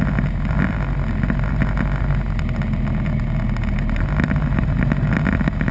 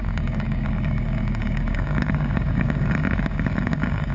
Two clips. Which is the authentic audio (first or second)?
first